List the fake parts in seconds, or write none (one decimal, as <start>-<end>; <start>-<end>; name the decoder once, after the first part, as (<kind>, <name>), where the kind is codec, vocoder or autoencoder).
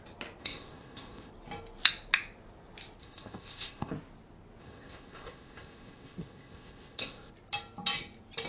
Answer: 0.4-1.3 (codec, ZipCodec); 3.0-3.9; 4.6-7.3